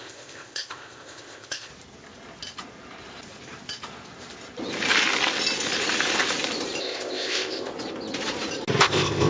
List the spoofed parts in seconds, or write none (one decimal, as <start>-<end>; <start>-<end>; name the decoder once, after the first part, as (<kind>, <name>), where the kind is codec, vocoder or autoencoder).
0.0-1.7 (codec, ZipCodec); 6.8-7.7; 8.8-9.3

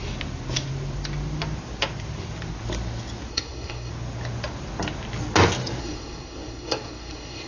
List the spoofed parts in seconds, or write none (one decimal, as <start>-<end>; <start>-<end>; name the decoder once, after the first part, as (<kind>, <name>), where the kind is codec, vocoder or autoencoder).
3.3-3.9 (codec, SNAC); 5.8-7.5

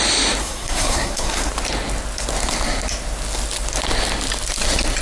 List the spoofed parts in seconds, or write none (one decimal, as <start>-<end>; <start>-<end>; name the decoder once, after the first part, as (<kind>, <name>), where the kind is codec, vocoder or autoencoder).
0.4-1.5 (codec, SNAC)

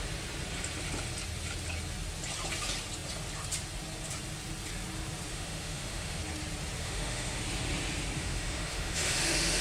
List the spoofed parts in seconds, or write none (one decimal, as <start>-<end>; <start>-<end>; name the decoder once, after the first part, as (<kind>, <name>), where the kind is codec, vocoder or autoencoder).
5.3-6.2 (autoencoder, DAC-VAE); 6.8-7.4; 8.2-9.6

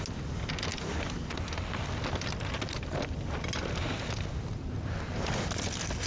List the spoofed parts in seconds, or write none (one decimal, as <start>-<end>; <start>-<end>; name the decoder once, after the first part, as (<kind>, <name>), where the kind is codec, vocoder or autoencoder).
none

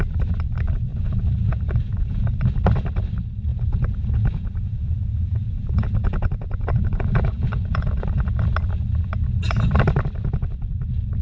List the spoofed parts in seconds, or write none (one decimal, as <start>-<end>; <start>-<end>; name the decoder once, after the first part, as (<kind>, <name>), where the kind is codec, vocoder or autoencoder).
0.9-2.4 (vocoder, Vocos); 3.5-8.4

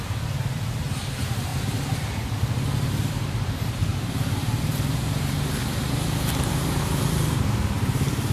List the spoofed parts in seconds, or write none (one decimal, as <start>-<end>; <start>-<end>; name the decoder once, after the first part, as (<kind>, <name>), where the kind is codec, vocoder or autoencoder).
0.0-1.5 (vocoder, BigVGAN v2); 2.9-8.3